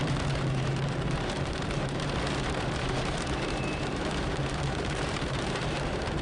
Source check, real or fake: fake